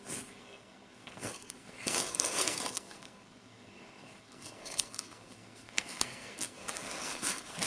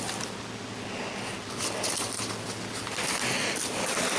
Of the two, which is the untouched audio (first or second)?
second